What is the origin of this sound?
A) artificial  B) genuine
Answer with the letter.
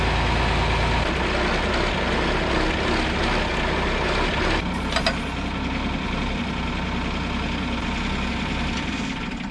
B